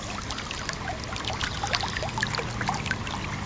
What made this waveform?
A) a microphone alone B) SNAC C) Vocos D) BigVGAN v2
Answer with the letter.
A